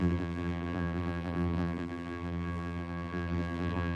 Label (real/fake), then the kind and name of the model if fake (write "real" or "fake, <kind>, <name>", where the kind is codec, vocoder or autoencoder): fake, vocoder, BigVGAN v2